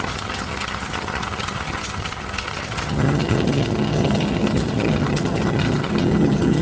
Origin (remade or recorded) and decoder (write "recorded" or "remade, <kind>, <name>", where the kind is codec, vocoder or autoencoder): remade, vocoder, HiFi-GAN